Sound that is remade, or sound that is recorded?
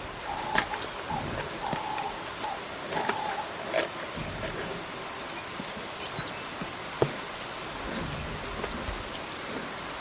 recorded